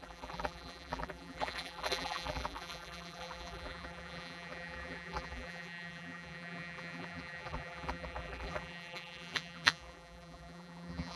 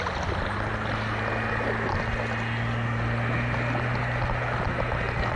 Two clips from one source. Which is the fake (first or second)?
first